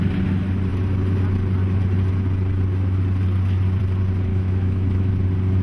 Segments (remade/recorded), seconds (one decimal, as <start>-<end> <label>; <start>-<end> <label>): 0.0-4.3 recorded; 4.3-5.1 remade; 5.1-5.6 recorded